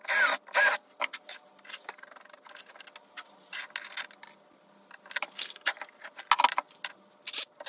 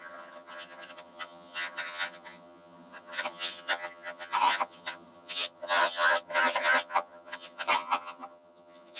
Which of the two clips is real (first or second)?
first